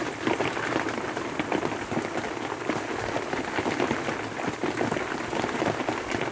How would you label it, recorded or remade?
recorded